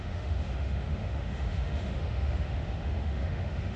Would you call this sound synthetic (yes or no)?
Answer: yes